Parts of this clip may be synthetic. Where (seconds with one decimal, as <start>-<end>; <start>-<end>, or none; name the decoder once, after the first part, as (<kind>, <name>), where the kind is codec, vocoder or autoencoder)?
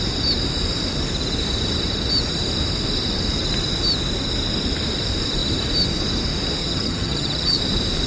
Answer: 6.6-7.6 (vocoder, HiFi-GAN)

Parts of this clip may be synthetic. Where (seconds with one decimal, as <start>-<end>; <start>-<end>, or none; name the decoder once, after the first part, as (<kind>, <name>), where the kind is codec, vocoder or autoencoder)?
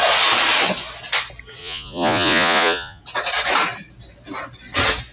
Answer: 1.6-3.0 (vocoder, Vocos)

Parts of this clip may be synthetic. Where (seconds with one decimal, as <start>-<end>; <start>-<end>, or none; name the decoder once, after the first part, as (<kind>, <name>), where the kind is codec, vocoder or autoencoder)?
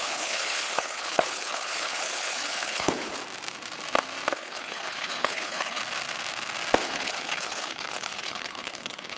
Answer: 0.0-3.2 (codec, HILCodec); 4.3-5.8; 6.8-9.2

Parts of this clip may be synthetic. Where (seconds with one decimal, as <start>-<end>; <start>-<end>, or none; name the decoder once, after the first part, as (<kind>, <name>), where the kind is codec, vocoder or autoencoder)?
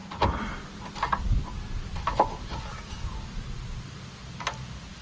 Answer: none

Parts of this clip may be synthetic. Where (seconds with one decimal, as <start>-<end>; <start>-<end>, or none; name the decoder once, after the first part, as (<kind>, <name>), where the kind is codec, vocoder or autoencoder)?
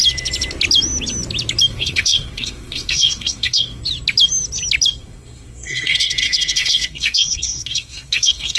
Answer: 1.7-3.8 (codec, SNAC); 5.0-8.6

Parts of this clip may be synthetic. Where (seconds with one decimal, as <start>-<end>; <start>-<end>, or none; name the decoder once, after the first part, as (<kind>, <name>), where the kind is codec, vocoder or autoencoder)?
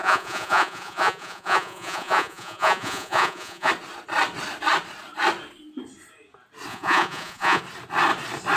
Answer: 0.0-3.7 (vocoder, Vocos); 6.7-7.6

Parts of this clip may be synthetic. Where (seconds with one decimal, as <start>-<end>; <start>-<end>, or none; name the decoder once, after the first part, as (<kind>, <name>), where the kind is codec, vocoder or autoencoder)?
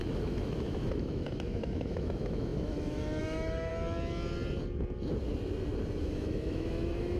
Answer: 0.0-3.7 (autoencoder, DAC-VAE); 6.0-7.2